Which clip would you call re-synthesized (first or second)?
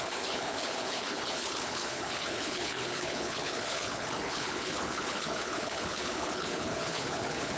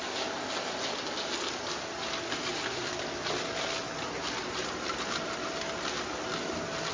first